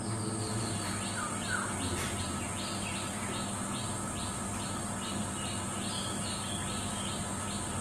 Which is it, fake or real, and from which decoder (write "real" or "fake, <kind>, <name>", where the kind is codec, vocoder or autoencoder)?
real